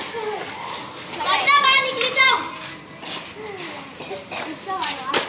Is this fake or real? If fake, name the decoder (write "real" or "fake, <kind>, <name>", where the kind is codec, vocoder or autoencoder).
real